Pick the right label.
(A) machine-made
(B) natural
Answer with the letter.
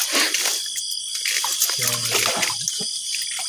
B